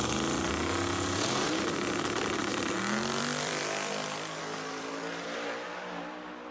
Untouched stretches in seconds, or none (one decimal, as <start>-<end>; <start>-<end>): 0.0-2.5; 4.4-6.5